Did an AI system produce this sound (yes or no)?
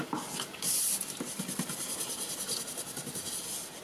no